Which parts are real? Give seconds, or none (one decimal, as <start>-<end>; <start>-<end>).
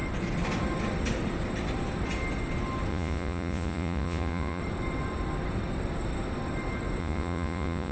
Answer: 0.0-2.9; 4.6-7.0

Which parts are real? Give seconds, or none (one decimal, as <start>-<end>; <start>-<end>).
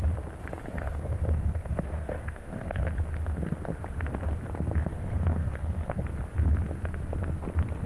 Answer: 0.0-0.7; 2.9-4.8; 6.0-7.9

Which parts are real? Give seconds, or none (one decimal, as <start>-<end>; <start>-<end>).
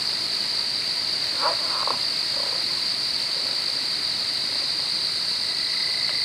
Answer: 0.0-6.2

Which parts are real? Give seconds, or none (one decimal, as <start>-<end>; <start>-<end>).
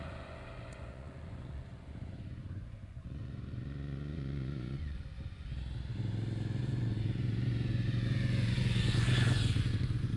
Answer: 5.5-6.6